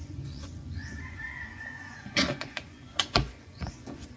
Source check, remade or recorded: remade